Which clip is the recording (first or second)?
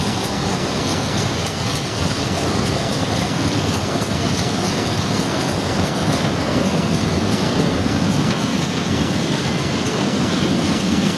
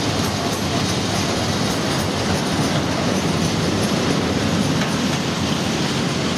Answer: second